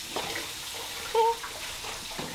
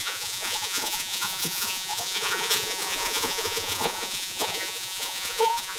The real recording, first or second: first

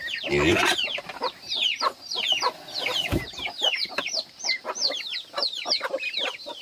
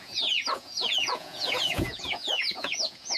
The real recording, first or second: first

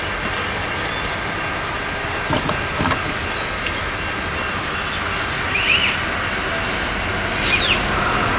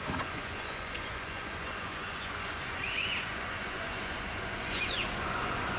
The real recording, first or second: first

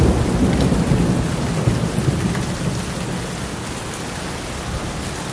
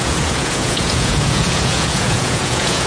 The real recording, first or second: first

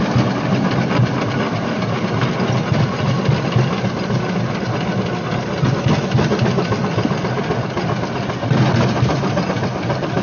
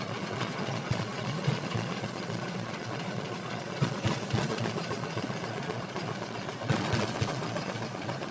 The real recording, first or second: first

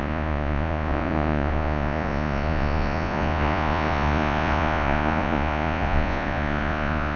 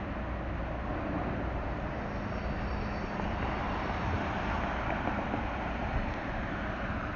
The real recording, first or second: second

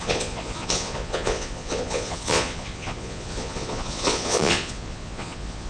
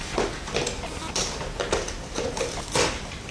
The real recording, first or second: second